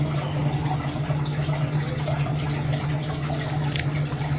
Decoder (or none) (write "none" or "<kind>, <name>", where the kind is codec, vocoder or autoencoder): none